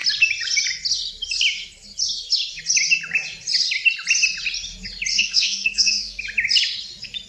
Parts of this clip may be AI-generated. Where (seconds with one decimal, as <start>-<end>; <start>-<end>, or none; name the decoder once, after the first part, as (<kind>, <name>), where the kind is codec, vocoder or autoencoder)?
5.1-6.2 (codec, SNAC)